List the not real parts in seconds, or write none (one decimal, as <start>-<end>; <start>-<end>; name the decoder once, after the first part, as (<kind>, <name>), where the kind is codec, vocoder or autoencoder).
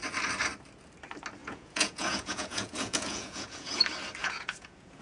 1.4-3.8 (vocoder, Vocos); 4.2-5.0